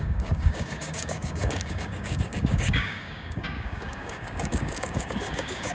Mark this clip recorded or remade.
remade